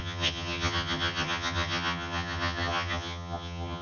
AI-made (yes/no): yes